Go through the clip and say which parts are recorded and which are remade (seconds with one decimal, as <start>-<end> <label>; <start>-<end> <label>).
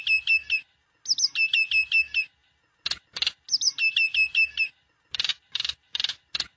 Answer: 0.0-6.6 recorded